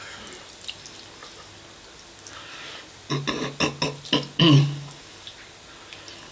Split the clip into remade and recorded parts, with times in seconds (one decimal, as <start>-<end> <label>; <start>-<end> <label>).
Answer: 0.0-6.3 recorded